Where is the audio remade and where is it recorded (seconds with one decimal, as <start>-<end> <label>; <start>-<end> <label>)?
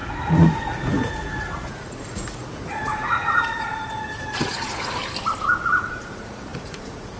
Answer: 0.0-5.0 remade; 5.0-5.8 recorded; 5.8-7.2 remade